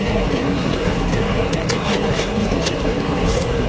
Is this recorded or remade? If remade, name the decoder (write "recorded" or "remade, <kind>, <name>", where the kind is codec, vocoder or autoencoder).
remade, codec, SNAC